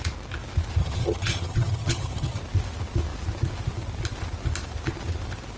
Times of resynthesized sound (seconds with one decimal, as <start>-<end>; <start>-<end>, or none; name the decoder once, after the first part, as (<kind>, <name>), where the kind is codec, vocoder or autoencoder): 0.8-2.4 (vocoder, HiFi-GAN)